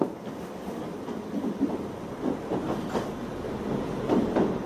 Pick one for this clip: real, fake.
real